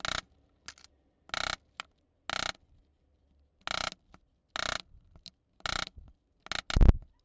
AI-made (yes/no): no